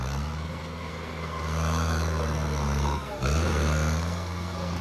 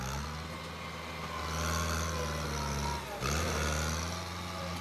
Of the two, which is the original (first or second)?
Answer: second